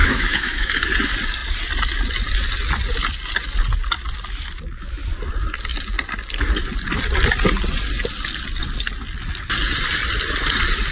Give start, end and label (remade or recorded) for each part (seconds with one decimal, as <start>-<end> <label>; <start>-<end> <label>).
0.0-0.8 remade; 0.8-10.9 recorded